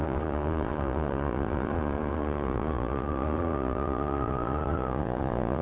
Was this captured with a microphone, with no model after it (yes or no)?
no